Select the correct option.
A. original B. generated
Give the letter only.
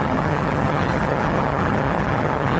B